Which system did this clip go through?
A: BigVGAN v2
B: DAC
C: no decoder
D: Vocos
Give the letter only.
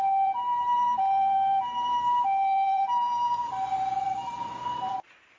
A